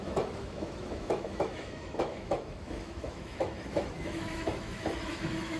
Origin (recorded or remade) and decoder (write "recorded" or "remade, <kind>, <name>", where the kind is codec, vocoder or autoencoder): remade, autoencoder, DAC-VAE